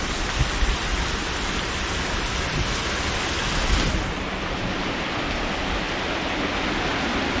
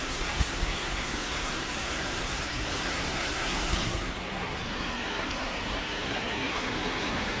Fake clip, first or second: second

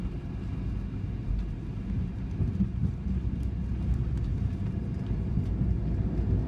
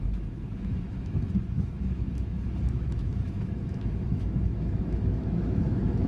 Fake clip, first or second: second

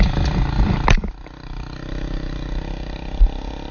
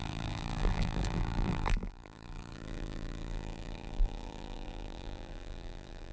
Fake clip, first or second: second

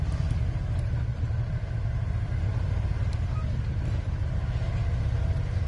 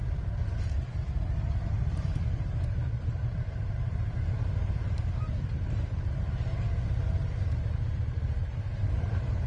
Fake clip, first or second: second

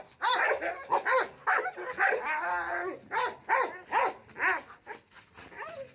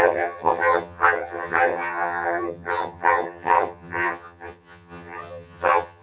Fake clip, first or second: second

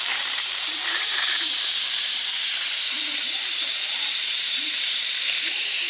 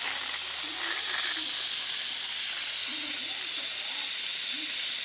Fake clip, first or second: first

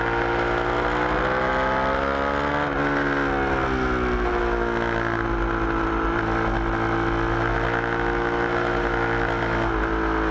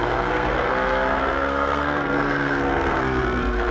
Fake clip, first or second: second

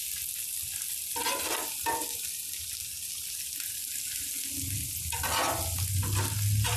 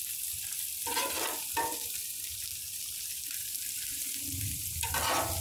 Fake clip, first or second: second